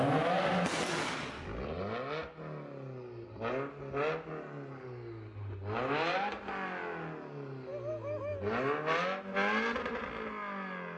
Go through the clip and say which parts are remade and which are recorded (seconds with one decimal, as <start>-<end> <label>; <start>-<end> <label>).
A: 0.0-11.0 recorded

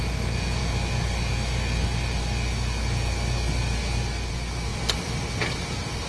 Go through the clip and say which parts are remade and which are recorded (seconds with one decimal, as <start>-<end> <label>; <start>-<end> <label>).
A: 0.0-4.7 recorded; 4.7-5.2 remade; 5.2-6.1 recorded

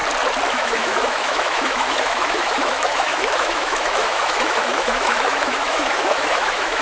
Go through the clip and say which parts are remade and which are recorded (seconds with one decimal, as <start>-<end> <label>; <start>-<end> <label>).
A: 0.0-0.5 recorded; 0.5-6.8 remade

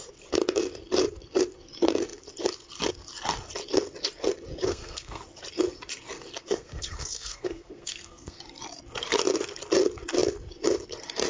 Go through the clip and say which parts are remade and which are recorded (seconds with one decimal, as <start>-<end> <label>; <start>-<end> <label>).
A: 0.0-4.7 recorded; 4.7-5.2 remade; 5.2-6.4 recorded; 6.4-8.4 remade; 8.4-11.3 recorded

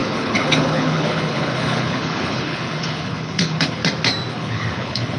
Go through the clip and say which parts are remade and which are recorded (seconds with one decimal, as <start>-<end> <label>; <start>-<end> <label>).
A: 0.0-3.8 remade; 3.8-4.3 recorded; 4.3-5.2 remade

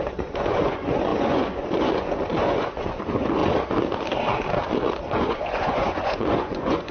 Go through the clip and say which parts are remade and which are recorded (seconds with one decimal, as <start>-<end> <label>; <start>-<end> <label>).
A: 0.0-3.4 remade; 3.4-5.1 recorded; 5.1-6.9 remade

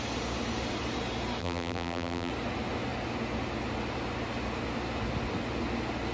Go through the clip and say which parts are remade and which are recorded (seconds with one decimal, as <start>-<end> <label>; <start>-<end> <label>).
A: 0.0-1.4 recorded; 1.4-2.3 remade; 2.3-6.1 recorded